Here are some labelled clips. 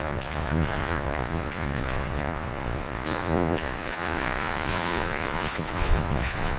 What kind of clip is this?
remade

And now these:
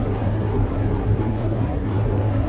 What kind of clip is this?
remade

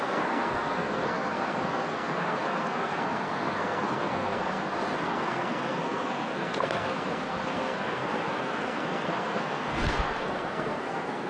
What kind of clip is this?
remade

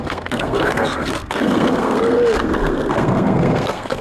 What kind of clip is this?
remade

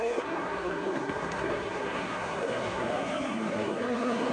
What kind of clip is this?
remade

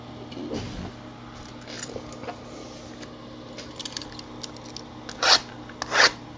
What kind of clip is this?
recorded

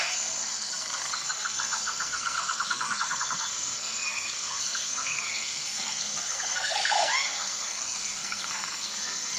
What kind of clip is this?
remade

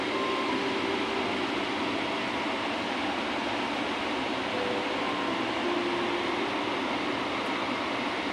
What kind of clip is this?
remade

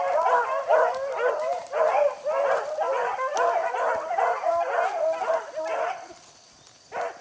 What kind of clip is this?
recorded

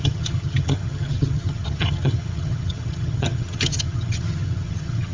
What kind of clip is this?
remade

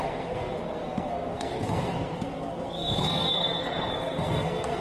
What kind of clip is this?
remade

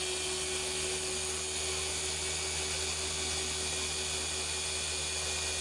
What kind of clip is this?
recorded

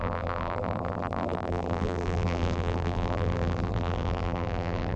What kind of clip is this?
remade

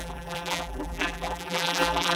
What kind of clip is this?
remade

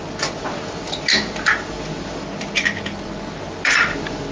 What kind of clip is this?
recorded